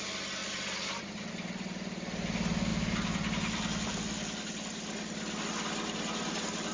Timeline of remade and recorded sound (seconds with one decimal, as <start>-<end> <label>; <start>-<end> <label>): 0.0-0.4 recorded; 0.4-1.3 remade; 1.3-2.7 recorded; 2.7-3.9 remade; 3.9-6.7 recorded